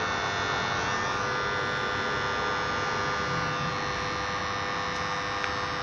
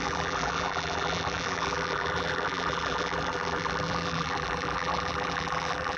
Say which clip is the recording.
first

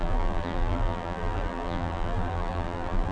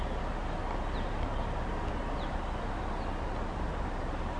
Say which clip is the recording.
second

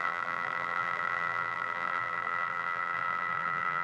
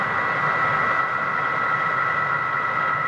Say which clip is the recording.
second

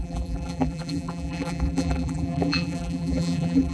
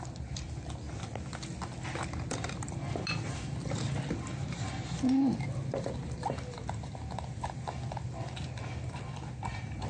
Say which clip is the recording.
second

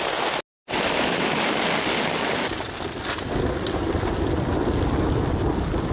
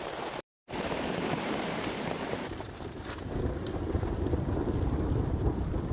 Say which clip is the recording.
first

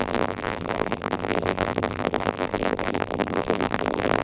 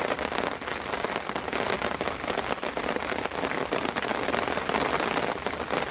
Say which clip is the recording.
second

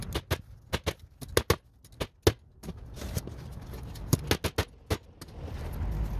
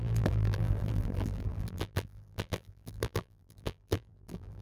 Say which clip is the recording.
first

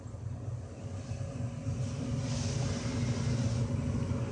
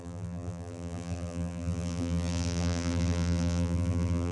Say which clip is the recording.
first